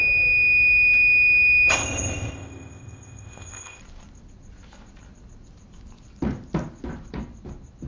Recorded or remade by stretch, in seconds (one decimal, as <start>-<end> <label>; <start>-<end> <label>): 0.0-1.7 recorded; 1.7-3.8 remade; 3.8-7.9 recorded